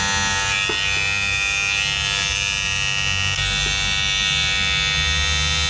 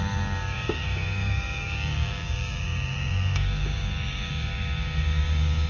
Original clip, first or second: first